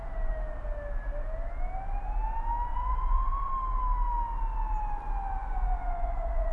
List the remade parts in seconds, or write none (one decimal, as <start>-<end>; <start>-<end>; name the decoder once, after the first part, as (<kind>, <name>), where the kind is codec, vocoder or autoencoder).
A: 2.7-3.5 (vocoder, Vocos); 5.4-6.5